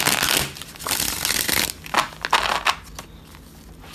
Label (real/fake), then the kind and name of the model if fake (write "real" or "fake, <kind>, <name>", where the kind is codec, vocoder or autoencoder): real